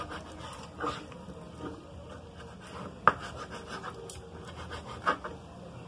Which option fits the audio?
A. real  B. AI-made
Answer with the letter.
A